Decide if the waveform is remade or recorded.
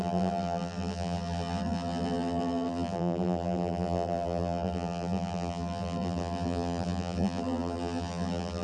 remade